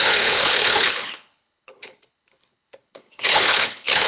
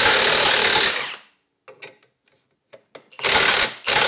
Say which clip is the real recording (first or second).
second